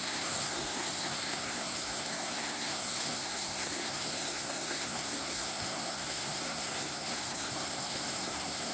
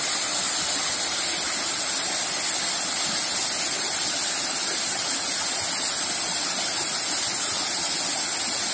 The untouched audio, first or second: second